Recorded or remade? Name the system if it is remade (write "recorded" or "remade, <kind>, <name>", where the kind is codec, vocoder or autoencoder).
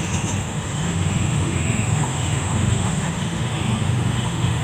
remade, autoencoder, DAC-VAE